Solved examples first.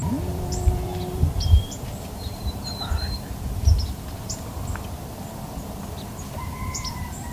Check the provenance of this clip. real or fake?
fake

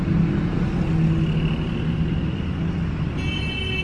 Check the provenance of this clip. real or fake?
real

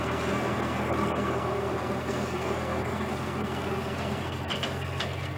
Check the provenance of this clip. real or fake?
fake